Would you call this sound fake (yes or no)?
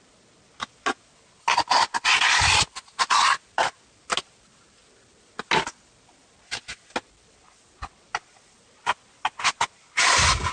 no